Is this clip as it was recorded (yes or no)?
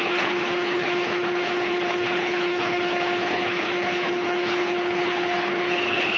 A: no